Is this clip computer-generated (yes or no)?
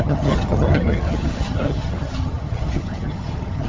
yes